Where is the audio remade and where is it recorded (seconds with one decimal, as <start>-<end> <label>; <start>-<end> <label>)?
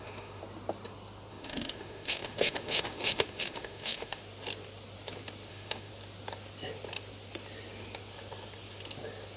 0.0-0.4 remade; 0.4-1.3 recorded; 1.3-4.2 remade; 4.2-5.5 recorded; 5.5-5.9 remade; 5.9-9.4 recorded